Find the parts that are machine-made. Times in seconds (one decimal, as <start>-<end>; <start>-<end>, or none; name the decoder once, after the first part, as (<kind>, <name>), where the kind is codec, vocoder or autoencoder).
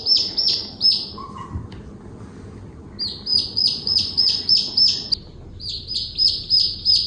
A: 3.3-4.5 (vocoder, Vocos)